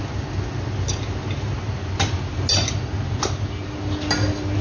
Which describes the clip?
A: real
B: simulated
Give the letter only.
A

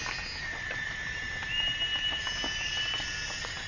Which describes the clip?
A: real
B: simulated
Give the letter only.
A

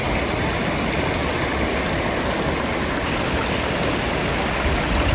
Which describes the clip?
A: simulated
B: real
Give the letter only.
B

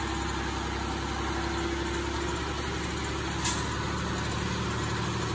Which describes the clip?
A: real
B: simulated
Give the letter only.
A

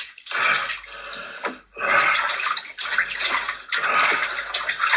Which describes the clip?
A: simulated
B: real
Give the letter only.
B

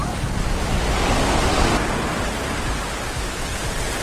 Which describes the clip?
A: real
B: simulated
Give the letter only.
A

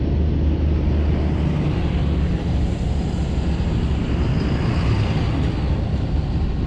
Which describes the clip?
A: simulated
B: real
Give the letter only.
B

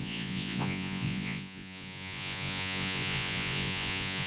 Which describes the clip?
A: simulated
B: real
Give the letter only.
A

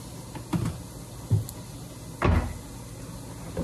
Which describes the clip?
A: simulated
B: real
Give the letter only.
B